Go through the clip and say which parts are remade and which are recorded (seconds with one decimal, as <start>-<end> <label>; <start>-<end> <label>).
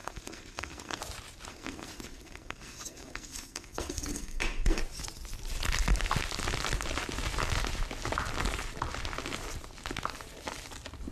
0.0-1.0 remade; 1.0-1.5 recorded; 1.5-4.8 remade; 4.8-11.1 recorded